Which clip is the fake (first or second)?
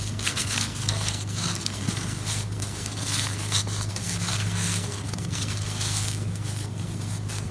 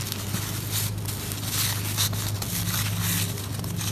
first